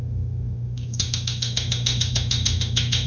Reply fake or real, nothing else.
fake